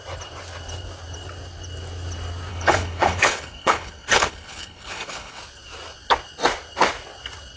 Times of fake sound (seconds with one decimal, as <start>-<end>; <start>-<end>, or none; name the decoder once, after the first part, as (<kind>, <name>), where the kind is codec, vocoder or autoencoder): 2.5-5.4 (codec, HILCodec)